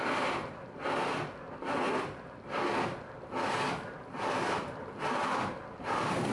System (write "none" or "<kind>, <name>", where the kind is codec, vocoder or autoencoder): vocoder, BigVGAN v2